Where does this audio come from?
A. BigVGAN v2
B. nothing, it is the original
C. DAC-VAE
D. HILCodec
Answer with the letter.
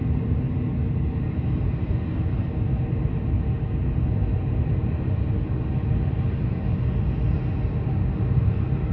B